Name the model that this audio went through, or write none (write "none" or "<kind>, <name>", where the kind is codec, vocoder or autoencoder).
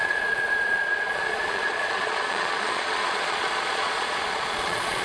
vocoder, Vocos